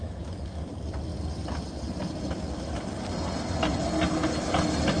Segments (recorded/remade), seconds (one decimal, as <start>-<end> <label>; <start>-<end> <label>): 0.0-0.7 remade; 0.7-5.0 recorded